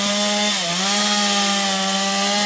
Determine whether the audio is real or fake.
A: real